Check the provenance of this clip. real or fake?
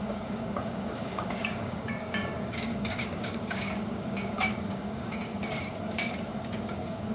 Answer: fake